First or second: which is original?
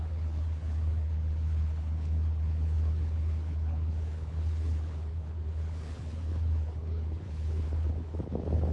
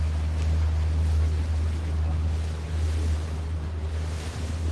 second